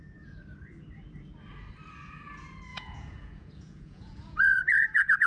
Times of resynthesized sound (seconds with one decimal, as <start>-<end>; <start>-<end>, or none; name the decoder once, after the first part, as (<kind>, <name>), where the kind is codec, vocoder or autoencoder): 2.7-5.3 (vocoder, Vocos)